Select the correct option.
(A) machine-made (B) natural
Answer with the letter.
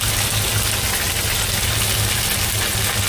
B